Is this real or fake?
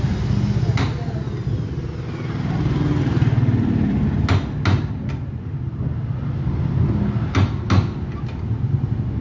real